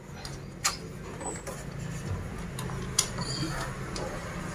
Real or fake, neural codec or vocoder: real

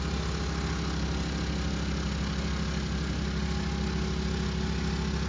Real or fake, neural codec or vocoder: real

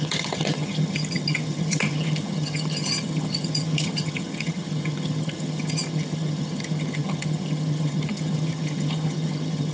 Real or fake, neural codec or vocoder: fake, vocoder, HiFi-GAN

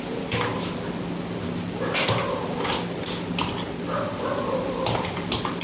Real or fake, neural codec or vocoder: real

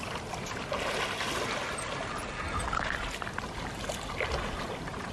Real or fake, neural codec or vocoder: real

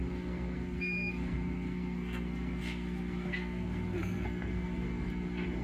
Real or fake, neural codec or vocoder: fake, codec, SNAC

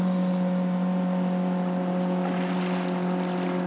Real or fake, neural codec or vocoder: real